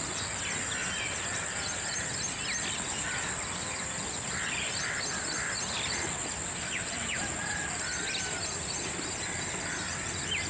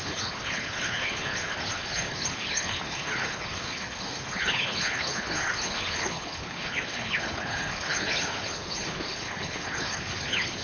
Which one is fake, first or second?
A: second